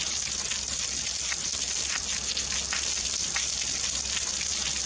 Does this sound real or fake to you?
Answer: real